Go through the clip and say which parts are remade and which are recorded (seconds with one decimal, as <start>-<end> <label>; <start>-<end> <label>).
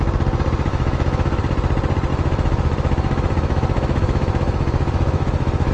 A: 0.0-0.7 recorded; 0.7-1.4 remade; 1.4-2.1 recorded; 2.1-5.7 remade